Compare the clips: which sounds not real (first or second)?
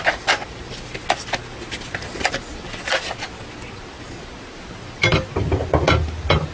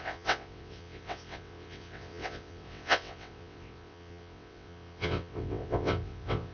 second